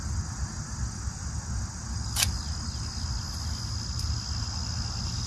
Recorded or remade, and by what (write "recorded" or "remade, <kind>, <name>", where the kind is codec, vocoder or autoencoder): recorded